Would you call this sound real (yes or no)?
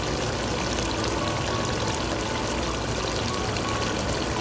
yes